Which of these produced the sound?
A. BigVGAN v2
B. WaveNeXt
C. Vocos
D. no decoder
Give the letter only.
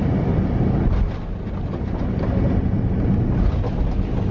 D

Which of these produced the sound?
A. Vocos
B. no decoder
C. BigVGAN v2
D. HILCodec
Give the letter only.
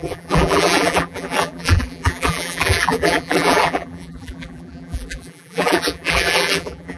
C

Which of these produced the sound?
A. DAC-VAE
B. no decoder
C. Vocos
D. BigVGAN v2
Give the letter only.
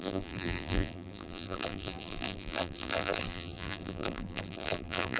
D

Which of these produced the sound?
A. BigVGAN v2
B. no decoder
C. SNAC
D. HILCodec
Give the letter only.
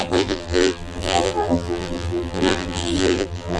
A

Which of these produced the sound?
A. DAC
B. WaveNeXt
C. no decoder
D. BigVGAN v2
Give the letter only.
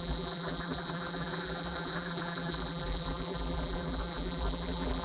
D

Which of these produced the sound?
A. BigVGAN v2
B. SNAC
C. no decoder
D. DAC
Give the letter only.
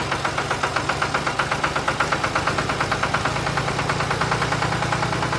C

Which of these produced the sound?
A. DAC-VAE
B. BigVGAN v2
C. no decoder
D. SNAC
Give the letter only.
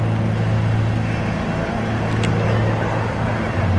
C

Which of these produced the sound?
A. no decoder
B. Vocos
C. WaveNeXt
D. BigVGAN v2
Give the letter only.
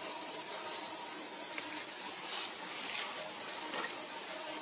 A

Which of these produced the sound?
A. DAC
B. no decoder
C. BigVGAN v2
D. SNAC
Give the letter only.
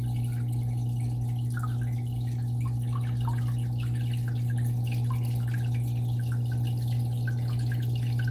B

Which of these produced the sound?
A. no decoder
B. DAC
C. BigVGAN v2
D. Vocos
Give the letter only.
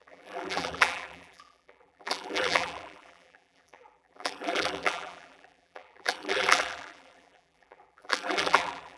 C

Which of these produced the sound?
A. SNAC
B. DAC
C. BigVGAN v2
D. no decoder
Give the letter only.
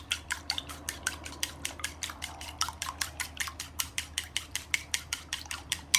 C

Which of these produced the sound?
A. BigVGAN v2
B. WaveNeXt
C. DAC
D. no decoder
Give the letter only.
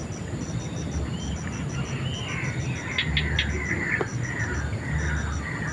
D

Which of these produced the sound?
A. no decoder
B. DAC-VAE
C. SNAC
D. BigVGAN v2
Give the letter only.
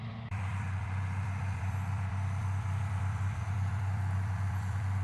D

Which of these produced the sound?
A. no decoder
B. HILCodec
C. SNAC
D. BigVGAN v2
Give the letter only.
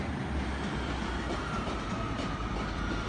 A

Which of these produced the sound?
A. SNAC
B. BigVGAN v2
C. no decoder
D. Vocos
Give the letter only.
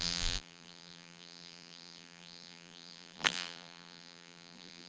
B